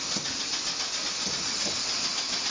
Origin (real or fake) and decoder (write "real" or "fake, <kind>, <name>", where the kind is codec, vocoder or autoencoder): real